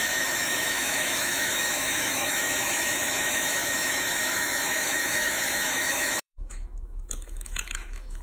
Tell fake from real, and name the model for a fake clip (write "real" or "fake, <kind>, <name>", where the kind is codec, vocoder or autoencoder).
fake, autoencoder, DAC-VAE